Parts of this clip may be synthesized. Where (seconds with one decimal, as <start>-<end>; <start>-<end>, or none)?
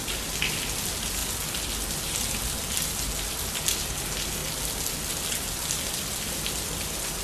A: none